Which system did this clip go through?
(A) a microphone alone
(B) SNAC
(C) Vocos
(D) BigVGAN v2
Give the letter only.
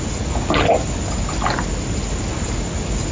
A